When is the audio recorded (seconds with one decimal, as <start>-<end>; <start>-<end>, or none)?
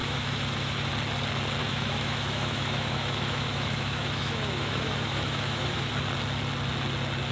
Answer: 0.9-1.6; 5.9-7.3